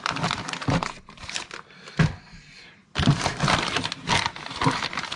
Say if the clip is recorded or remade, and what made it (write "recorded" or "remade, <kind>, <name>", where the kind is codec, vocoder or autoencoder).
recorded